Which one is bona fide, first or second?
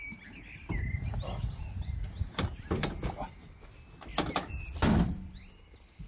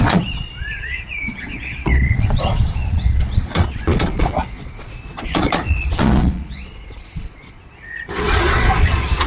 first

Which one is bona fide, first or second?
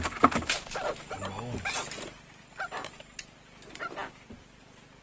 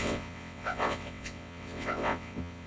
first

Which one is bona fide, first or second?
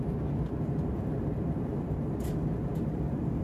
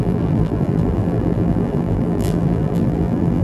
first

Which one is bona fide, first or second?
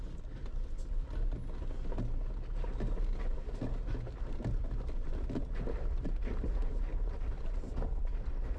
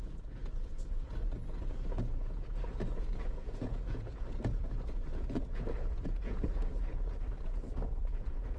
first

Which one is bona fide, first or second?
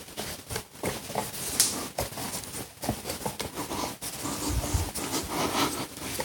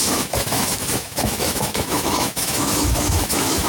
first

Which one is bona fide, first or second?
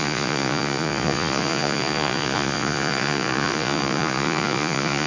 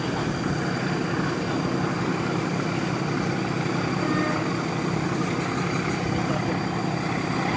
second